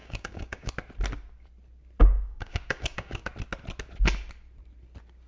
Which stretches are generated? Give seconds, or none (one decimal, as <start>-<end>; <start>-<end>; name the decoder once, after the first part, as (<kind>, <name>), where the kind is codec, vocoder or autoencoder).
0.0-0.7 (codec, DAC); 2.0-3.3